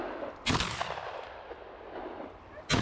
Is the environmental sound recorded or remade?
recorded